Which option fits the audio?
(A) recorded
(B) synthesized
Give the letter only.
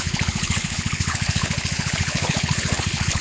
B